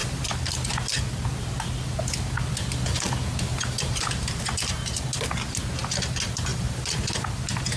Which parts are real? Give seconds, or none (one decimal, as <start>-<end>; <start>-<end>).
0.0-3.5; 4.4-6.5